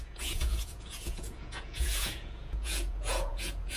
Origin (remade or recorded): remade